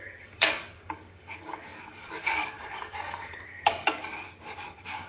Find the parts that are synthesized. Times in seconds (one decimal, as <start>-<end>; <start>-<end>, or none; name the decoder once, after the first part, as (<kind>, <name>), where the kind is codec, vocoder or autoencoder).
0.0-5.1 (codec, DAC)